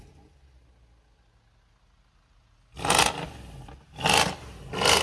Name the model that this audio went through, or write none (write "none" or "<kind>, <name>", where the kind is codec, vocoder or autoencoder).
none